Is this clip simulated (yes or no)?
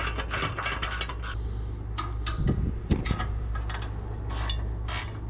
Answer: no